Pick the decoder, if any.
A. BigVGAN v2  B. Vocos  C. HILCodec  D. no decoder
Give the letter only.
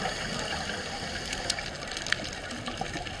D